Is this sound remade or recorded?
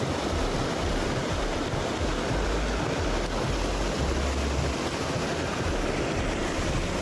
recorded